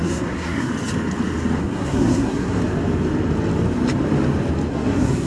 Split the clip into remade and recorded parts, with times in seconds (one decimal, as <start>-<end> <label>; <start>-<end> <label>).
0.0-0.7 remade; 0.7-1.6 recorded; 1.6-2.6 remade; 2.6-4.7 recorded; 4.7-5.3 remade